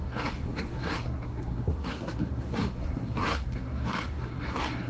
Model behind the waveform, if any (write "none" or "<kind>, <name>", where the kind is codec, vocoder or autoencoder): codec, SNAC